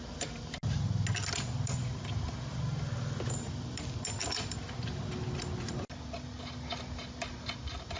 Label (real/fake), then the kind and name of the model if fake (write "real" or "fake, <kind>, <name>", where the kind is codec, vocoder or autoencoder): real